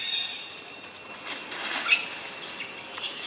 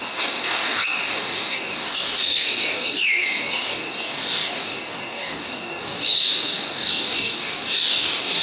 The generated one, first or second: second